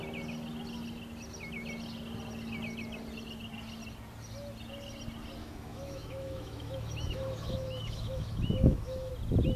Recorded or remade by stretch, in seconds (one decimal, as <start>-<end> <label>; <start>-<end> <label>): 0.0-5.4 recorded; 5.4-9.1 remade; 9.1-9.6 recorded